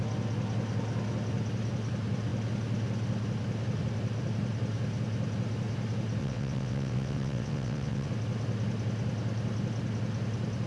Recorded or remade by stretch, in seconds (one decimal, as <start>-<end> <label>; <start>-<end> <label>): 0.0-6.2 recorded; 6.2-8.1 remade; 8.1-10.7 recorded